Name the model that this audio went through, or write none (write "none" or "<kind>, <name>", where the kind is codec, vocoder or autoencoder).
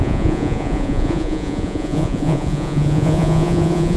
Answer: vocoder, Vocos